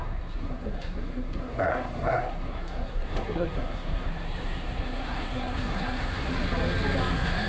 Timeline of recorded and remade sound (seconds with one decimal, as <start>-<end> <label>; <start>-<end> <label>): 0.0-6.3 remade; 6.3-7.1 recorded; 7.1-7.5 remade